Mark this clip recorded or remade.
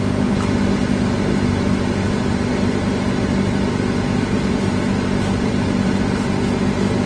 recorded